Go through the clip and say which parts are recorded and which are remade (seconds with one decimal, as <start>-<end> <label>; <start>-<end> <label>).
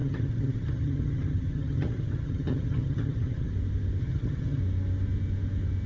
0.0-3.5 remade; 3.5-4.0 recorded; 4.0-4.6 remade; 4.6-5.9 recorded